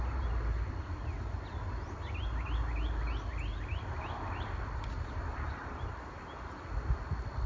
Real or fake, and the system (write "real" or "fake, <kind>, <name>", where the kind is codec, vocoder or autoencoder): real